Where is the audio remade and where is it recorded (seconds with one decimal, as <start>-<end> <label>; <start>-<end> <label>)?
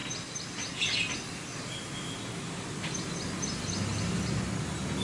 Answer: 0.0-5.0 recorded